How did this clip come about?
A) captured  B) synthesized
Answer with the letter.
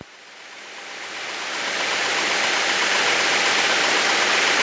A